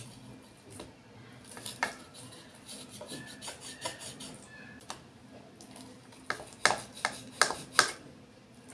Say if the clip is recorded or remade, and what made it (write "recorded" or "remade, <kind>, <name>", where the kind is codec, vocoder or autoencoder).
recorded